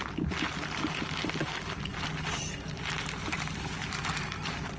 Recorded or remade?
recorded